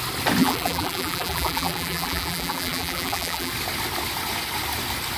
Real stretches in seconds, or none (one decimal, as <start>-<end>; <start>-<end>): 0.0-0.4; 3.5-5.2